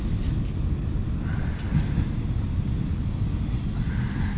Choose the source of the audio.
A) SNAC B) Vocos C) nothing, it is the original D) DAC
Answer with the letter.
C